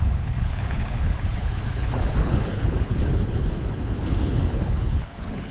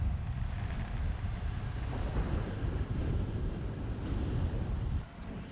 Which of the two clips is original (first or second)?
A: second